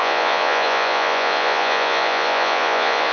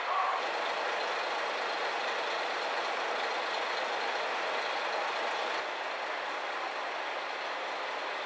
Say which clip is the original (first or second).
second